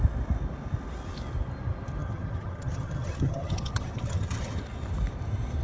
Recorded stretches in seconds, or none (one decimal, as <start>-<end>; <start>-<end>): 0.0-2.0; 4.6-5.6

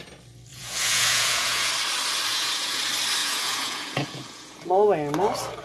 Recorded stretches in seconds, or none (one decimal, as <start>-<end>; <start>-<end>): 0.0-0.5; 1.7-2.3; 2.8-3.2; 4.7-5.6

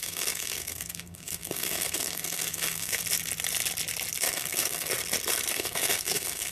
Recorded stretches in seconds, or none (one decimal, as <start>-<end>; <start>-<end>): 3.0-4.2; 4.9-5.5

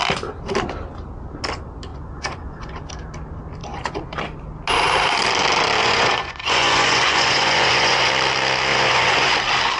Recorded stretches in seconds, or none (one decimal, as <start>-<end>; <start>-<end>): 0.0-1.9; 2.9-3.6; 4.2-5.8; 8.1-8.7; 9.4-9.8

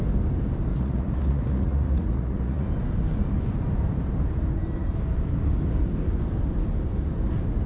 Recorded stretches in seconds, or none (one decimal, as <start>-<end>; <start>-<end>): 0.0-0.7; 2.7-7.7

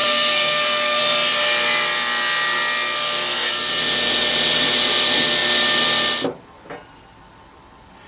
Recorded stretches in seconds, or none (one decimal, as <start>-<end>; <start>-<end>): 1.0-8.1

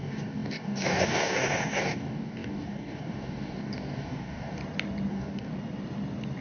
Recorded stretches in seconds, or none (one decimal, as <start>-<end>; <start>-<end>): 4.6-5.1; 5.5-6.4

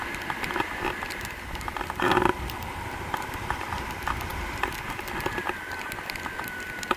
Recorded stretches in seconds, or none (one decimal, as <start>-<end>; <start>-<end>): 0.0-7.0